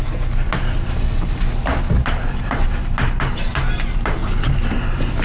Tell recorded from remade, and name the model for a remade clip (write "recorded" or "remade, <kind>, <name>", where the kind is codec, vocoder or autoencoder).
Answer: recorded